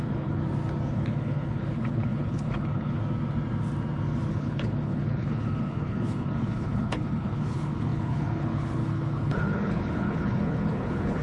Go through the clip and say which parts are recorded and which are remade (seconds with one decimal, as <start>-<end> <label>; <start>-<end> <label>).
0.0-0.4 remade; 0.4-0.9 recorded; 0.9-3.0 remade; 3.0-4.3 recorded; 4.3-11.2 remade